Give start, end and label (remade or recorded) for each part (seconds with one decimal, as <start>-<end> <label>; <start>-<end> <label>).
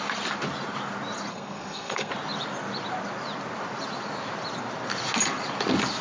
0.0-1.3 recorded; 1.3-2.1 remade; 2.1-6.0 recorded